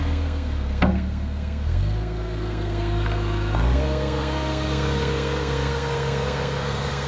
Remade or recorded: remade